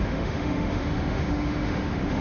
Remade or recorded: remade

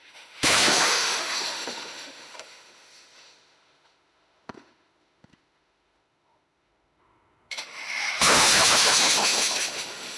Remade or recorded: remade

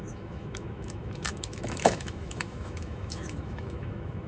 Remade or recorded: remade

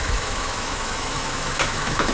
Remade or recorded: remade